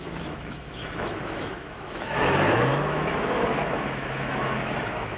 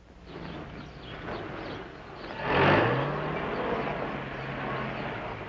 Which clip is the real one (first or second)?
second